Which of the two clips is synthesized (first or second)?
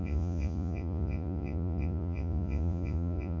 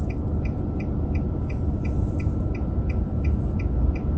first